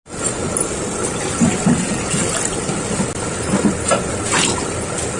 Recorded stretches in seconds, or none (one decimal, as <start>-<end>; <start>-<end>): 0.0-5.2